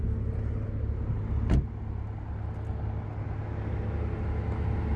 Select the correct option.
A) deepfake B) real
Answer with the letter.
B